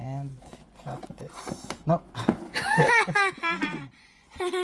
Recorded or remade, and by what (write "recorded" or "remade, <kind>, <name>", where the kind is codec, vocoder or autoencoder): remade, vocoder, Vocos